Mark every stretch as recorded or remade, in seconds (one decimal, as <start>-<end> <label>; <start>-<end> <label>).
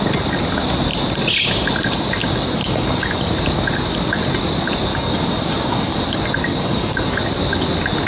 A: 0.0-2.6 recorded; 2.6-3.2 remade; 3.2-4.9 recorded; 4.9-6.0 remade; 6.0-6.5 recorded; 6.5-7.2 remade; 7.2-8.1 recorded